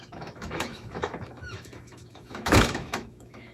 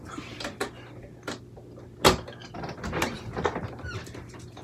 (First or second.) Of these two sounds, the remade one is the first